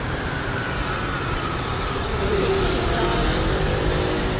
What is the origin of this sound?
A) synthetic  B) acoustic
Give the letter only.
B